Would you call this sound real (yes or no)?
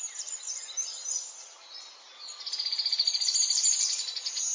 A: yes